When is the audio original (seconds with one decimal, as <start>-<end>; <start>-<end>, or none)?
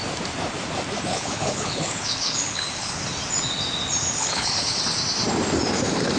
0.0-1.1; 3.0-4.2; 4.8-6.2